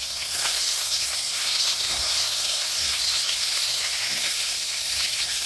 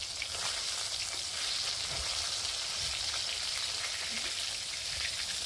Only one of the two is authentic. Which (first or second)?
second